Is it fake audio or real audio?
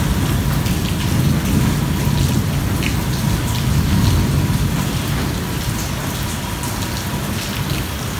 real